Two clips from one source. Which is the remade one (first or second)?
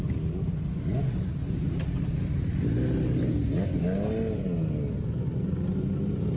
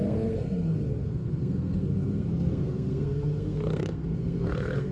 second